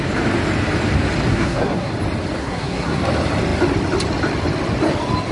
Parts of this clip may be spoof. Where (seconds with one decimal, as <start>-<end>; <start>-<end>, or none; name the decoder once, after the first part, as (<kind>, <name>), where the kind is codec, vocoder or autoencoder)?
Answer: 1.3-1.9 (codec, SNAC); 2.4-3.0